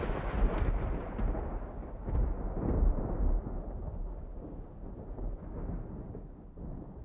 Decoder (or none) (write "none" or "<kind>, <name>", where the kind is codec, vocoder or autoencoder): none